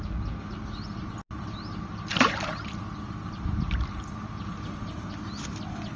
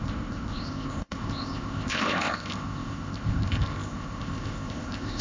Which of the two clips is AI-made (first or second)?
second